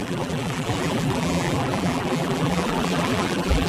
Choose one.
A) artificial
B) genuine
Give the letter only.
A